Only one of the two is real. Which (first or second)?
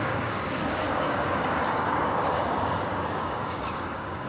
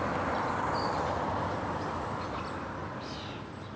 second